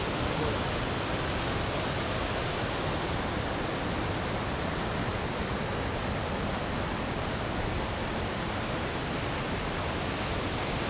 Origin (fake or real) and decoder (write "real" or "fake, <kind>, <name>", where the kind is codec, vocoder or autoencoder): real